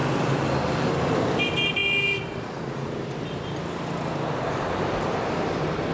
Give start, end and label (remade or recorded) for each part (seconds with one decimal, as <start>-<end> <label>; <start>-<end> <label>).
0.0-5.9 recorded